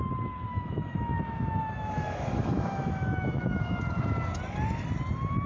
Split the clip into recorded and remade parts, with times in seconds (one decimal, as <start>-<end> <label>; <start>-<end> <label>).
0.0-0.5 recorded; 0.5-3.8 remade; 3.8-5.5 recorded